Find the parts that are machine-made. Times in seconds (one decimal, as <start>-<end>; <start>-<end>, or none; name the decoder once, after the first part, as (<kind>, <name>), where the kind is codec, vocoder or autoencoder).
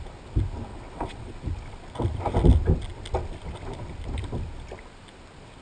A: 0.7-1.3 (vocoder, WaveNeXt)